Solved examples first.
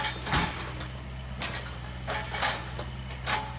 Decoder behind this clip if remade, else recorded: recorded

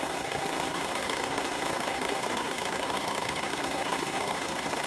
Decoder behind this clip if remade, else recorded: remade, codec, SNAC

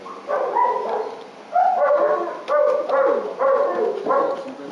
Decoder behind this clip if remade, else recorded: recorded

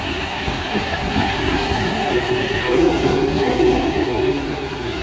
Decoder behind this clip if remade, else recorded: remade, codec, SNAC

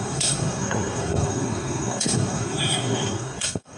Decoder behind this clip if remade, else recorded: remade, codec, SNAC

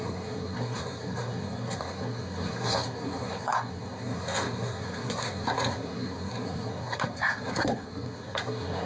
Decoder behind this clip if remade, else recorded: remade, codec, SNAC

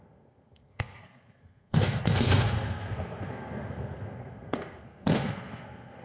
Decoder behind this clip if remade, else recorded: remade, codec, SNAC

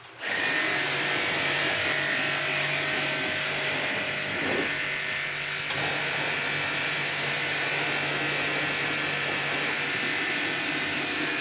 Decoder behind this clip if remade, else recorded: recorded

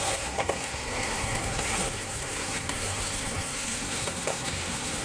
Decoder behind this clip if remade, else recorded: remade, codec, SNAC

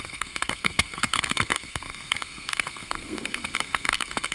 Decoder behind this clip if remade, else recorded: remade, codec, SNAC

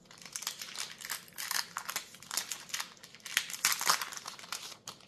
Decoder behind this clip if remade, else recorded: recorded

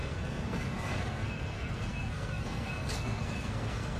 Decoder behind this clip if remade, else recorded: remade, codec, SNAC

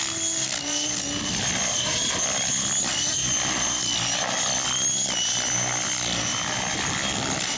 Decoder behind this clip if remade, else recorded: recorded